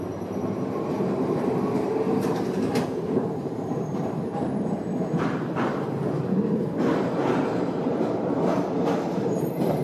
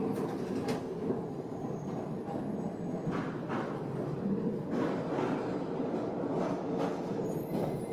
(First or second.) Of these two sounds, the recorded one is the second